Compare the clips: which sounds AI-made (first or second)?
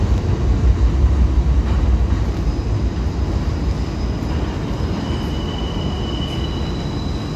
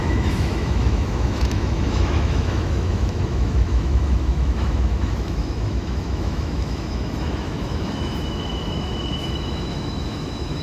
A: second